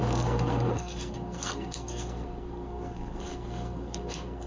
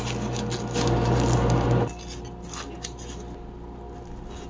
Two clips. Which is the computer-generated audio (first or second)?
first